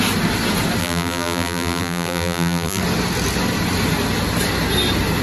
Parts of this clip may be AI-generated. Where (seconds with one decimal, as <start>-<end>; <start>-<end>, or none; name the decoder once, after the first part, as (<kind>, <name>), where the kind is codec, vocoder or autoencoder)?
0.8-2.8 (vocoder, BigVGAN v2)